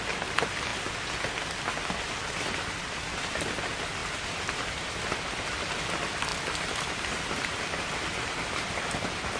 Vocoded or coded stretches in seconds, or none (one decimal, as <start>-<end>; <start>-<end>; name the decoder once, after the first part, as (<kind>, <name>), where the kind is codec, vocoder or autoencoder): 6.3-8.7 (vocoder, BigVGAN v2)